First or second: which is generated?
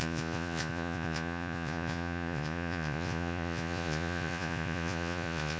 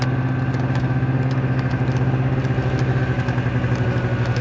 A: first